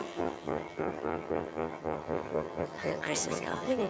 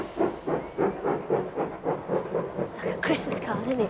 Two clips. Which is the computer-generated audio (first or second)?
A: first